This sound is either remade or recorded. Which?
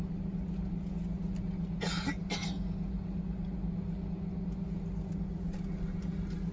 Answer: recorded